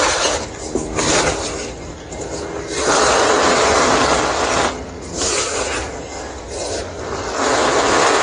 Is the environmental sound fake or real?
real